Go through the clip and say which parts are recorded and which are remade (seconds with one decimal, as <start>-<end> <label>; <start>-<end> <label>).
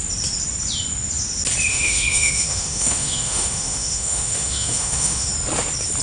0.0-1.7 recorded; 1.7-5.3 remade; 5.3-6.0 recorded